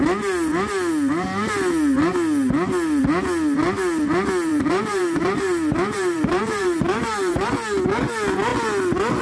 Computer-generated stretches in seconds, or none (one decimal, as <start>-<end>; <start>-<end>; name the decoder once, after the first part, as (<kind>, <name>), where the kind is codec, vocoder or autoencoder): 4.5-7.4 (vocoder, BigVGAN v2)